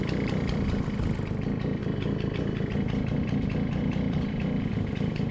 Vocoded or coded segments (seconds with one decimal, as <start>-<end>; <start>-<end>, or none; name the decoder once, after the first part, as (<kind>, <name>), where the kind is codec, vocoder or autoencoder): none